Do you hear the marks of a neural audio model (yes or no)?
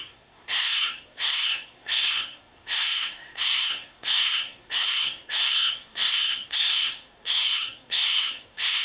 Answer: yes